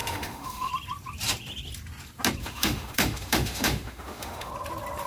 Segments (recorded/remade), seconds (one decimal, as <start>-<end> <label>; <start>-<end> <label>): 0.0-0.7 remade; 0.7-2.4 recorded; 2.4-4.5 remade; 4.5-5.1 recorded